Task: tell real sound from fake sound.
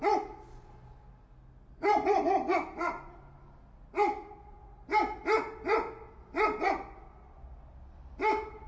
real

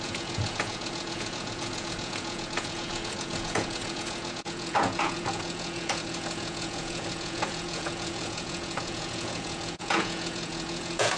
fake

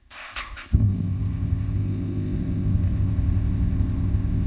fake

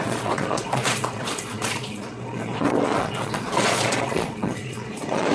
fake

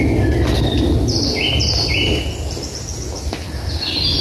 real